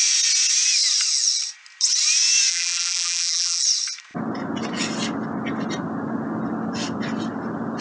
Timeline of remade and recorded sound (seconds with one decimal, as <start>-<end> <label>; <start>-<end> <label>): 0.0-2.5 recorded; 2.5-3.6 remade; 3.6-7.8 recorded